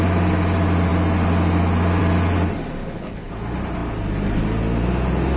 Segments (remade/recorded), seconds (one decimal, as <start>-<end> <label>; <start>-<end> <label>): 0.0-2.8 recorded; 2.8-3.3 remade; 3.3-5.4 recorded